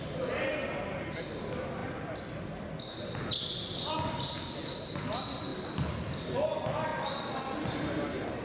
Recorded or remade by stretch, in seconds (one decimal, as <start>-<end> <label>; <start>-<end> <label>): 0.0-8.4 recorded